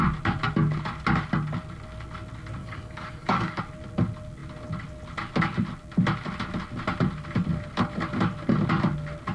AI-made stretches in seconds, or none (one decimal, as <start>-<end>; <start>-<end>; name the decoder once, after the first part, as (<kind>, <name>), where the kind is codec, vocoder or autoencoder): 2.6-3.6 (codec, DAC)